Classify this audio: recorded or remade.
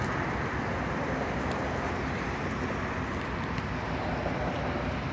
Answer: recorded